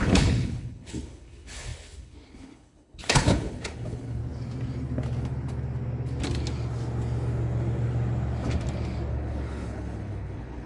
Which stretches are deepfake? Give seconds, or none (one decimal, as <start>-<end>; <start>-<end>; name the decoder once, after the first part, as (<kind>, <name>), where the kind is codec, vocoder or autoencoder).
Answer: 0.0-4.2 (codec, HILCodec); 9.1-10.7